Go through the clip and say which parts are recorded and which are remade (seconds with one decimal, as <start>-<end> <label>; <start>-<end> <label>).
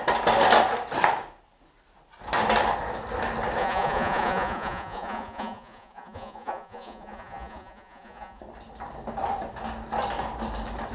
0.0-3.6 recorded; 3.6-8.4 remade; 8.4-10.9 recorded